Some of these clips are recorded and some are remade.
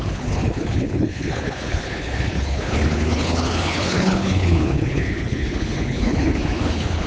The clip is remade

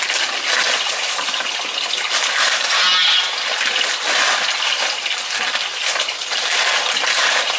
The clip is recorded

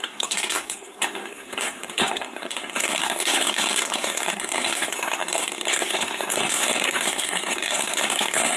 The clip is remade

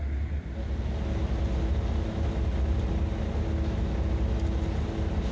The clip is recorded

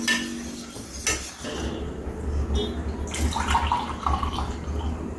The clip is recorded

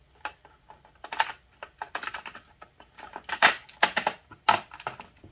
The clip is recorded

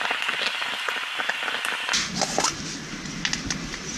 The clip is recorded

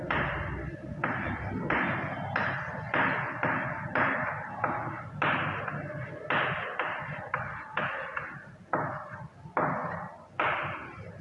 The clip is recorded